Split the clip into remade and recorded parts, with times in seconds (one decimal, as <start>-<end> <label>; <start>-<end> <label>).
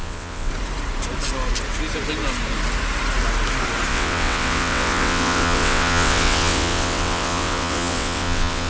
0.0-0.5 remade; 0.5-3.9 recorded; 3.9-8.7 remade